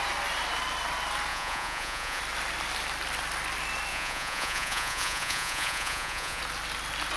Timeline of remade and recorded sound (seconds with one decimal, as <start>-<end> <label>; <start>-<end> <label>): 0.0-1.3 recorded; 1.3-2.2 remade; 2.2-3.9 recorded; 3.9-6.4 remade; 6.4-7.2 recorded

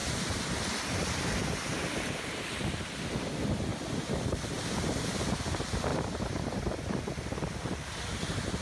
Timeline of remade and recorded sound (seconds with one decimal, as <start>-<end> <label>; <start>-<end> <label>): 0.0-2.3 remade; 2.3-3.7 recorded; 3.7-4.9 remade; 4.9-5.9 recorded; 5.9-7.2 remade; 7.2-8.6 recorded

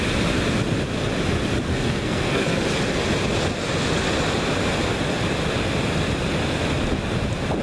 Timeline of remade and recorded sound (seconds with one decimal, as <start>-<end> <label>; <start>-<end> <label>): 0.0-1.7 recorded; 1.7-2.6 remade; 2.6-7.6 recorded